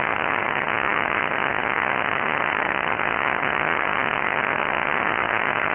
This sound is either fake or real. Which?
fake